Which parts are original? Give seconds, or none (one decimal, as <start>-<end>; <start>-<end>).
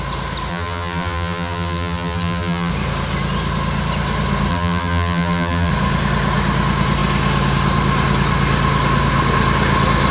0.0-0.5; 2.7-4.5; 5.7-10.1